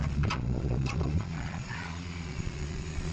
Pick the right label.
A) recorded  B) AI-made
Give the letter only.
B